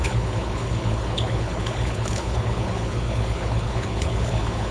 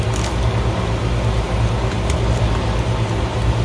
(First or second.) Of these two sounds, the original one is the second